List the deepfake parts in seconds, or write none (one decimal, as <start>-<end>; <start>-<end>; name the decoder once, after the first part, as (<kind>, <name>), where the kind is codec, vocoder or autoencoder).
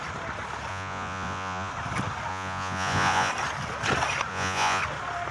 0.7-1.7 (vocoder, Vocos); 2.3-3.3; 4.3-4.8